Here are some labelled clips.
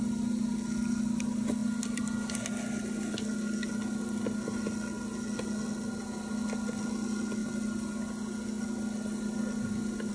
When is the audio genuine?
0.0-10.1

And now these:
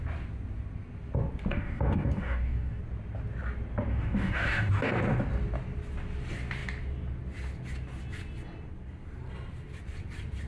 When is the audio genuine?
0.0-1.5; 2.8-3.9; 4.7-10.5

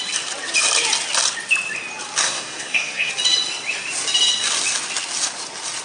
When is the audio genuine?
0.0-2.2; 3.1-5.8

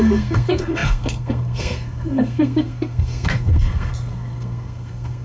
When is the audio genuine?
none

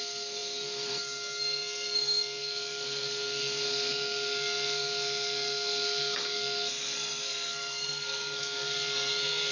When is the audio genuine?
none